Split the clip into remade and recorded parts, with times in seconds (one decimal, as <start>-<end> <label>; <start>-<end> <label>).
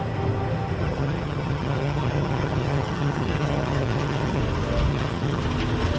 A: 0.0-0.8 recorded; 0.8-4.4 remade; 4.4-4.9 recorded; 4.9-5.4 remade; 5.4-6.0 recorded